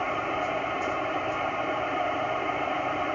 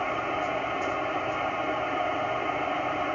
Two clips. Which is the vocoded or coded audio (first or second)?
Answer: first